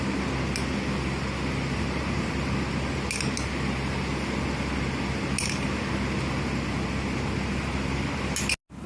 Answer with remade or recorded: recorded